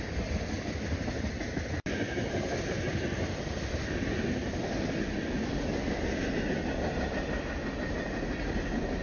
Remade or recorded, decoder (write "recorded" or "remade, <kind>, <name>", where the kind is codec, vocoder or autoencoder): recorded